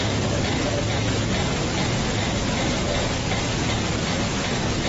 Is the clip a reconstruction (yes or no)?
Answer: no